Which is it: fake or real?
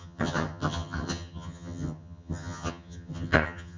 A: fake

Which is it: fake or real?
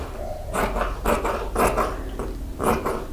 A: real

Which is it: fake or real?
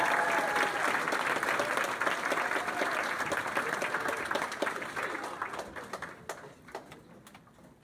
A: real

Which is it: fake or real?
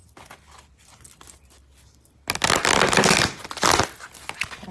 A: real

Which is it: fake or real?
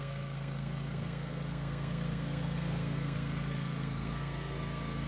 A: fake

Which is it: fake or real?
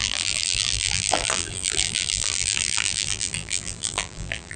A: fake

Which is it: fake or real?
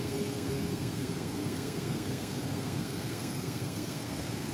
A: fake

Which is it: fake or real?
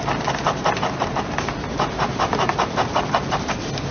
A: real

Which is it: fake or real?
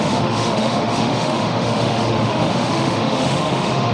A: fake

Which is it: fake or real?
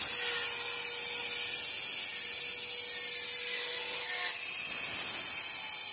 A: real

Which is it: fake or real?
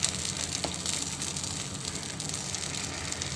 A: real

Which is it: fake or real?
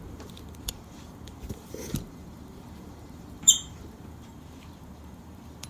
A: fake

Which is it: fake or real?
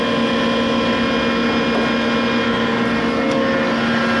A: real